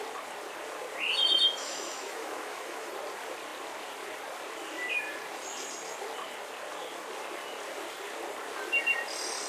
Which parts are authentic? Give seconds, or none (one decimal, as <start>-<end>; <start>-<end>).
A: 0.0-1.6; 2.9-9.5